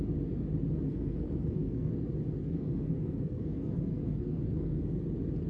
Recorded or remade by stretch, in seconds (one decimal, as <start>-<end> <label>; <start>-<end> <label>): 0.0-0.9 recorded; 0.9-1.9 remade; 1.9-2.4 recorded; 2.4-5.0 remade; 5.0-5.5 recorded